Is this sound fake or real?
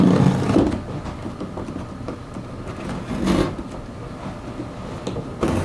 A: real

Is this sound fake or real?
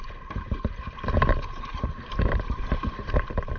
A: fake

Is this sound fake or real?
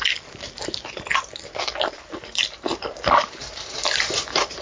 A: real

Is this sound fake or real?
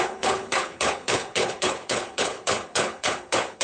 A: fake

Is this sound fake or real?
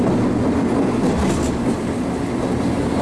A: real